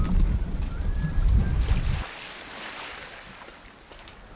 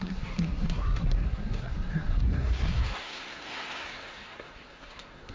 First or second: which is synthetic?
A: second